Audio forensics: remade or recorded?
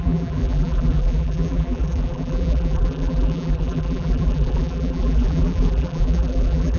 remade